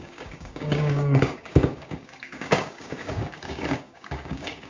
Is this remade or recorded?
remade